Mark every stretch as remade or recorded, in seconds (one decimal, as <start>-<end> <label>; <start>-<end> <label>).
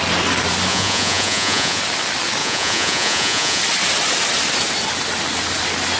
0.0-0.7 recorded; 0.7-1.8 remade; 1.8-2.4 recorded; 2.4-3.6 remade; 3.6-6.0 recorded